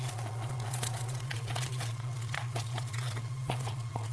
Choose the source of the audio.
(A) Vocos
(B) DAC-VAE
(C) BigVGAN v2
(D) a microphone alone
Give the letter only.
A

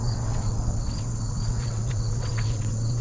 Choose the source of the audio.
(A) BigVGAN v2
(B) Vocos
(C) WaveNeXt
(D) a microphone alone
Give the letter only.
C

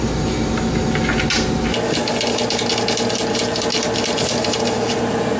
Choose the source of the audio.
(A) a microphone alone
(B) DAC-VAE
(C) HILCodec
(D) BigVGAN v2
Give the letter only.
A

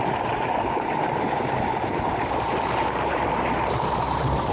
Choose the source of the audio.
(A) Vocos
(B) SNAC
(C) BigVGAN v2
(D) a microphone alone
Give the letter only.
C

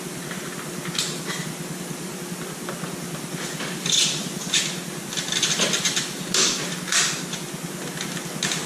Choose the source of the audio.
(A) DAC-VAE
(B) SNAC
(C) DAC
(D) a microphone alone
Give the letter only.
D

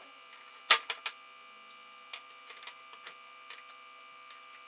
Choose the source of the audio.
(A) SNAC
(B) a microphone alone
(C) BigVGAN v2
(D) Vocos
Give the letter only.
B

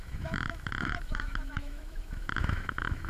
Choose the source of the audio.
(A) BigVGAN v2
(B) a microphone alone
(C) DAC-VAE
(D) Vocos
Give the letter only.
C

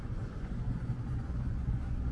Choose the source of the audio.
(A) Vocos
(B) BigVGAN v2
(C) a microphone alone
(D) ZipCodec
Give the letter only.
A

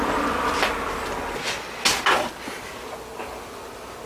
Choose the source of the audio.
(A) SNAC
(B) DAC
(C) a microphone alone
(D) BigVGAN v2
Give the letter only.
C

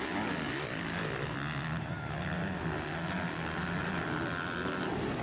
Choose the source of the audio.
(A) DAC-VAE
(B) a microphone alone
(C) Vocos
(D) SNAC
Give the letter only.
B